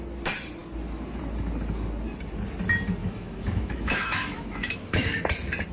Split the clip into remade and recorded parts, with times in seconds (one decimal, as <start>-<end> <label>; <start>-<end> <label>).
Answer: 0.0-3.0 recorded; 3.0-5.2 remade; 5.2-5.7 recorded